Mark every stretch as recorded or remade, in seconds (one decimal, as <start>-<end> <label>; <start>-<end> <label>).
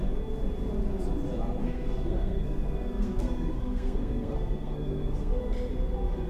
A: 0.0-1.6 recorded; 1.6-5.4 remade; 5.4-6.3 recorded